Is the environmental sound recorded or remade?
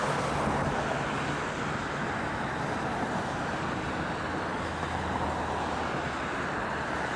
recorded